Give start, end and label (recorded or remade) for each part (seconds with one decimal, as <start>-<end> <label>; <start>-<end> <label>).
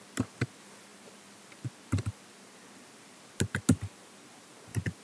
0.0-5.0 recorded